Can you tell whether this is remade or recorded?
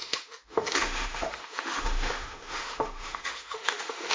remade